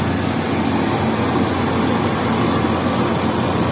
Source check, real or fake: real